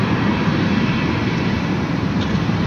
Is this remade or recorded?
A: remade